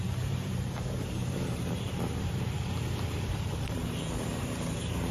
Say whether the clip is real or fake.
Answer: fake